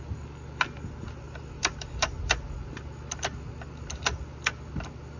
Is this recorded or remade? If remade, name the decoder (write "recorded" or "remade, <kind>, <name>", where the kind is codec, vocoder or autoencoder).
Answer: recorded